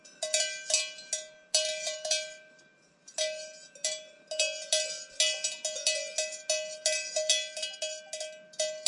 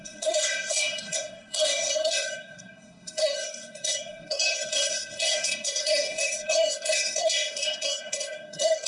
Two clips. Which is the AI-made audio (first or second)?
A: second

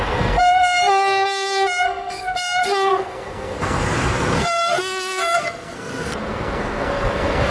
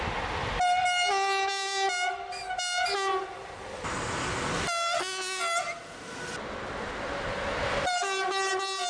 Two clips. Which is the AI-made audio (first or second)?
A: first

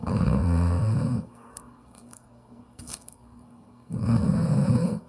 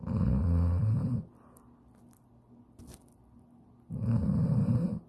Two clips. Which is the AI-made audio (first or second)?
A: first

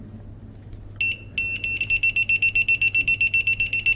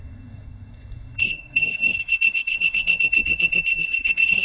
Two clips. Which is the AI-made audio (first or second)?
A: second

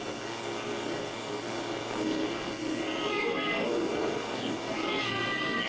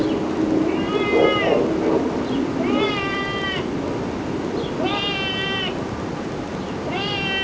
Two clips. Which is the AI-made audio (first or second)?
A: first